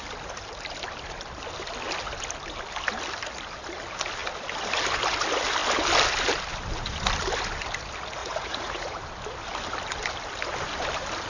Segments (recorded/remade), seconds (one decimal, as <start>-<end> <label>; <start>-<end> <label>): 0.0-8.2 recorded; 8.2-9.0 remade; 9.0-11.3 recorded